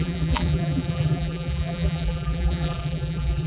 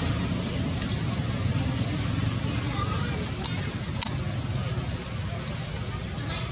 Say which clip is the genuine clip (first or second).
second